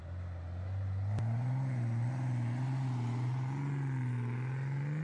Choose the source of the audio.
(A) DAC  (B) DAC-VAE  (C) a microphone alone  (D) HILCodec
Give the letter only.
C